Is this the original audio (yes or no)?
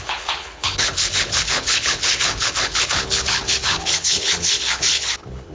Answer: no